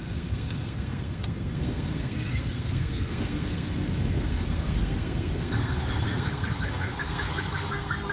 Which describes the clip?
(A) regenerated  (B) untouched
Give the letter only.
A